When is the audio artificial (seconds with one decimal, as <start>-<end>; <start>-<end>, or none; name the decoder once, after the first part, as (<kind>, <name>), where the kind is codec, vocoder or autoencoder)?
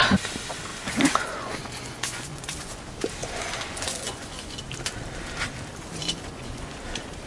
0.7-2.8 (vocoder, Vocos); 3.2-4.6; 6.0-6.8